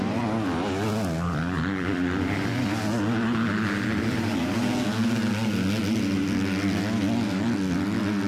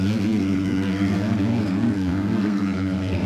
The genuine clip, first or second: first